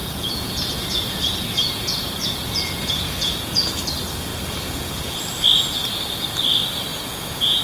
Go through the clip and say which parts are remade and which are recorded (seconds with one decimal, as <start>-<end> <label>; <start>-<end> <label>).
0.0-3.7 remade; 3.7-4.3 recorded; 4.3-5.2 remade; 5.2-6.9 recorded; 6.9-7.6 remade